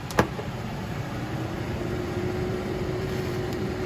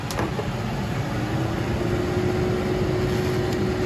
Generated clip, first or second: first